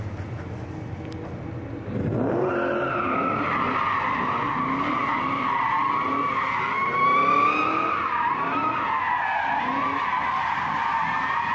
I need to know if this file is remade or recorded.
recorded